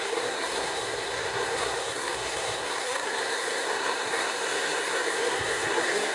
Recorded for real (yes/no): no